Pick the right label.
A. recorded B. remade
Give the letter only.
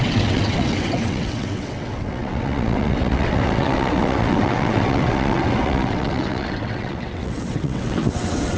B